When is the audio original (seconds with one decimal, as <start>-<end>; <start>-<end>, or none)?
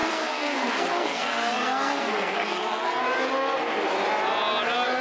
3.0-5.0